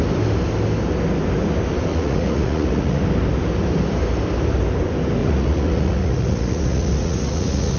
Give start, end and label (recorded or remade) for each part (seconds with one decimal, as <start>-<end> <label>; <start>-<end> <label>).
0.0-1.9 recorded; 1.9-3.0 remade; 3.0-5.2 recorded; 5.2-7.8 remade